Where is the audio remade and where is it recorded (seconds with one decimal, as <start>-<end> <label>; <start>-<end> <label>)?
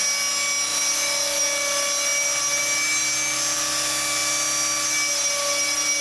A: 0.0-0.7 recorded; 0.7-1.4 remade; 1.4-6.0 recorded